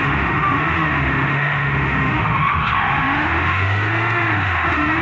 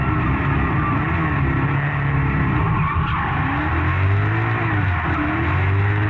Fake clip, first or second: first